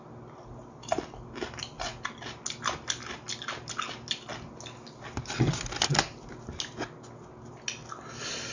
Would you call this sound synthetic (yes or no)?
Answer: no